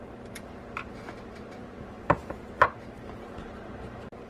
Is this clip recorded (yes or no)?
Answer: no